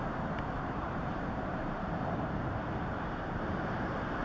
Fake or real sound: fake